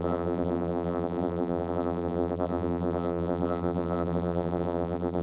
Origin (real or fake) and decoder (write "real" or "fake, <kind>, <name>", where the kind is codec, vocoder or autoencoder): fake, vocoder, BigVGAN v2